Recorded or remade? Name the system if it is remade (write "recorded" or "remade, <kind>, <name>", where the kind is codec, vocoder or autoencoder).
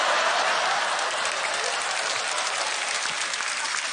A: remade, vocoder, BigVGAN v2